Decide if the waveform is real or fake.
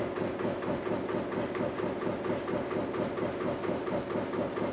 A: real